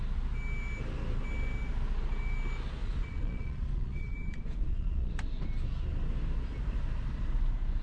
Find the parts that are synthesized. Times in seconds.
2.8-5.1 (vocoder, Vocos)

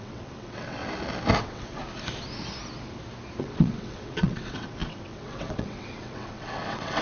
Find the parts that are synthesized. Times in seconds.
0.0-0.8 (vocoder, WaveNeXt); 1.4-1.8; 3.4-7.0